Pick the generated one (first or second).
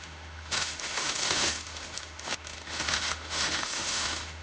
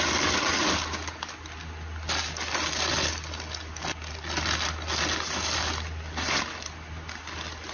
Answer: first